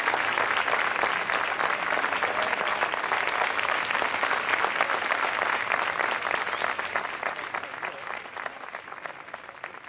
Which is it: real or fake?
real